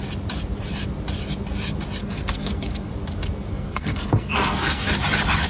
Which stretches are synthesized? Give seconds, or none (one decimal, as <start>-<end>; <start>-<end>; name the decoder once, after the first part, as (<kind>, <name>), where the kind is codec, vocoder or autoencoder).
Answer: 2.0-2.9 (codec, SNAC); 3.5-4.9